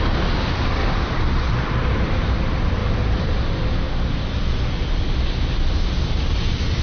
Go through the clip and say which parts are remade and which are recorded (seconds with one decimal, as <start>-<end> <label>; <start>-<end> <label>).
0.0-0.8 recorded; 0.8-2.4 remade; 2.4-2.8 recorded; 2.8-3.6 remade; 3.6-6.8 recorded